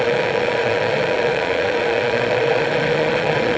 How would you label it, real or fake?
fake